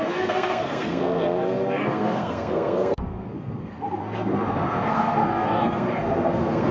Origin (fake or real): fake